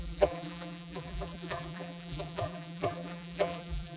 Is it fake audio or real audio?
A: fake